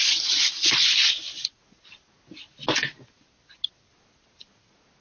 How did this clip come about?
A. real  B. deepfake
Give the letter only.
A